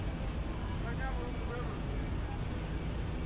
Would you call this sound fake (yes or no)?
no